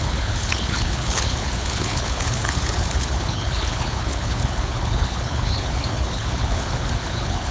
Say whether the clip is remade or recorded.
remade